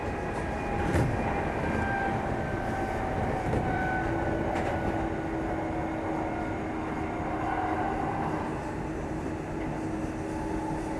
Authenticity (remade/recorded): recorded